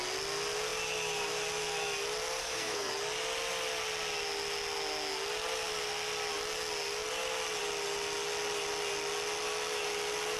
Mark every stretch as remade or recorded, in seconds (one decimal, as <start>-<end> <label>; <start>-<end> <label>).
0.0-2.4 recorded; 2.4-2.9 remade; 2.9-10.4 recorded